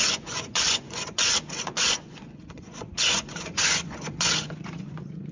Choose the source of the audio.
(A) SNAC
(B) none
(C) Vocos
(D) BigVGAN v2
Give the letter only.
C